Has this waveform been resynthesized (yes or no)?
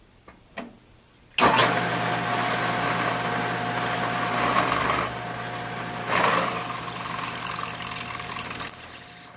no